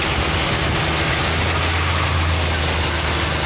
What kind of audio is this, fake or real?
real